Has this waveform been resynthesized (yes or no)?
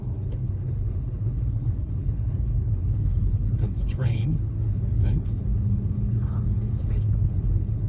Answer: yes